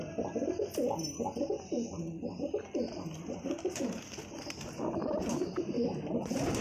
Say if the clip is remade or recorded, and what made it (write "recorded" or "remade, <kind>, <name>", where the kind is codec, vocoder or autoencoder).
recorded